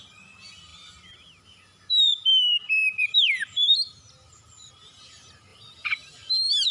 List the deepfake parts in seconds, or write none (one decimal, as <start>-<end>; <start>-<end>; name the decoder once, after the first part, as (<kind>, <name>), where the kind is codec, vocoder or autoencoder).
0.7-4.7 (vocoder, BigVGAN v2); 5.5-6.3